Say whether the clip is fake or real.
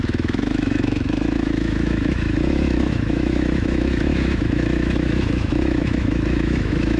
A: fake